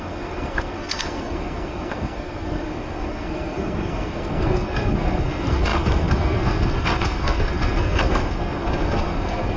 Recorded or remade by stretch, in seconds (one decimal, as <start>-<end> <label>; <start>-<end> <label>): 0.0-9.6 remade